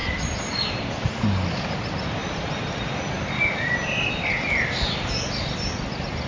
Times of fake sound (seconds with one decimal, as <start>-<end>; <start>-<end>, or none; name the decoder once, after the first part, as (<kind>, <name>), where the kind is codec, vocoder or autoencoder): none